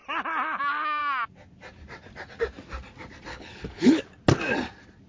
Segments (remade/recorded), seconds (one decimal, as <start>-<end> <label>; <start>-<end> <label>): 0.0-3.3 recorded; 3.3-4.0 remade; 4.0-5.1 recorded

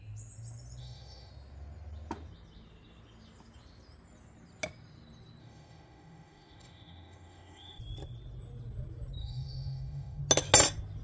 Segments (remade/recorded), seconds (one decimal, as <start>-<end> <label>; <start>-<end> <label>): 0.0-0.8 recorded; 0.8-1.3 remade; 1.3-5.4 recorded; 5.4-7.8 remade; 7.8-9.2 recorded; 9.2-10.2 remade; 10.2-11.0 recorded

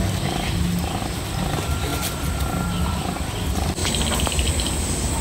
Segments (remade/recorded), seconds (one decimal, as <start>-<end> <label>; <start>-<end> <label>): 0.0-3.8 recorded; 3.8-4.5 remade; 4.5-5.2 recorded

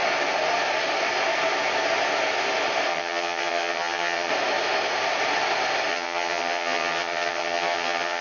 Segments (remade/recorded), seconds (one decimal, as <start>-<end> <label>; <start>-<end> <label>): 0.0-2.9 recorded; 2.9-4.3 remade; 4.3-5.9 recorded; 5.9-8.2 remade

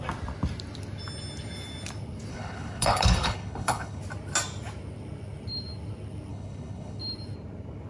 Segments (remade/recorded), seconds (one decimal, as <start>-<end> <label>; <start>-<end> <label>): 0.0-2.3 recorded; 2.3-4.0 remade; 4.0-6.3 recorded; 6.3-7.0 remade; 7.0-7.9 recorded

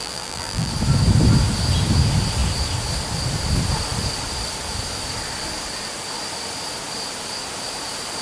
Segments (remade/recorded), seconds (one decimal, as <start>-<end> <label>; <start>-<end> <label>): 0.0-0.7 remade; 0.7-8.2 recorded